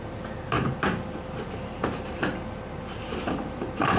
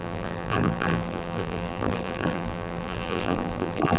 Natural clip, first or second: first